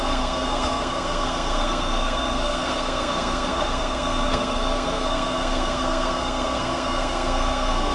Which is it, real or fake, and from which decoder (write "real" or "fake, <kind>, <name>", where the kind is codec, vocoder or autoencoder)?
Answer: fake, codec, SNAC